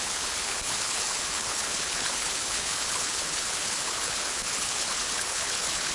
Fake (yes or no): yes